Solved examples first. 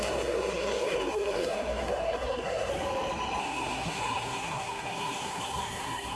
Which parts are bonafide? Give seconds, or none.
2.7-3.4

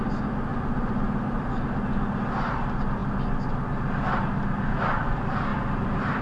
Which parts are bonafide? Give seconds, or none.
0.0-0.5; 1.5-5.5

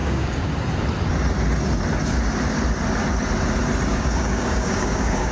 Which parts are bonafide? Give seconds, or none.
0.5-3.9

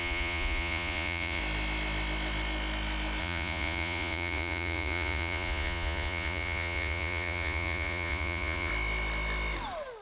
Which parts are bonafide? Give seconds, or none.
1.4-3.2; 8.7-10.0

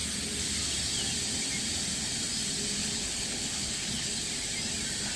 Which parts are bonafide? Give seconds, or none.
0.0-2.8; 4.2-5.2

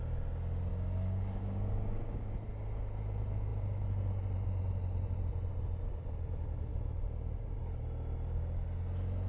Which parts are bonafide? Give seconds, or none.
0.0-0.7; 2.3-9.3

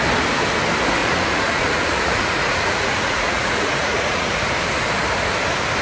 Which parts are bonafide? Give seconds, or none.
0.0-1.0; 4.5-5.8